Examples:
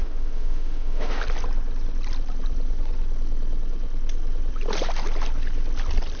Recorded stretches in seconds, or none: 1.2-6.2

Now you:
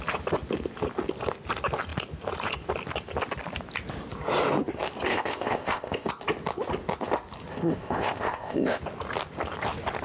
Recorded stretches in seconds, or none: 0.0-5.1; 6.1-7.5; 8.8-10.0

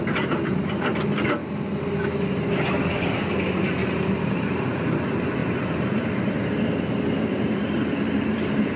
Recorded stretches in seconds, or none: 0.0-5.4; 6.1-7.6